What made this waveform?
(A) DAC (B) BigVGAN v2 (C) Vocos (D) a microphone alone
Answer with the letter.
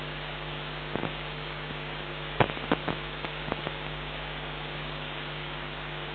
A